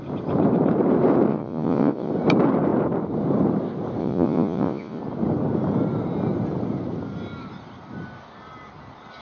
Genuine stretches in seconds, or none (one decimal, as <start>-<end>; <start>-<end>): 0.0-1.3; 2.1-4.0; 5.0-9.2